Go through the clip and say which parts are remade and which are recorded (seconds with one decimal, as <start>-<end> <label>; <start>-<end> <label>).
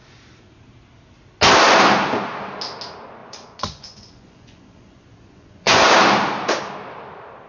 0.0-3.2 recorded; 3.2-5.9 remade; 5.9-7.5 recorded